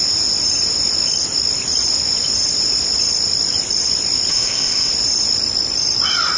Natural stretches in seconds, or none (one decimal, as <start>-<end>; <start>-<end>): 0.0-4.3; 4.9-6.4